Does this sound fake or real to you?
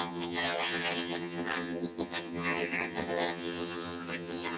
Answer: fake